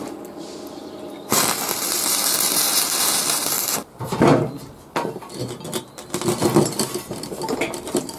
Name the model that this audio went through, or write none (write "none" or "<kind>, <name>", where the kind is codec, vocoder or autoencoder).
vocoder, BigVGAN v2